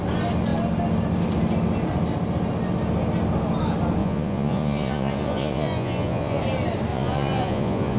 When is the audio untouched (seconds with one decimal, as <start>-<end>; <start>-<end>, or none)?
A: 0.0-4.0; 6.4-6.9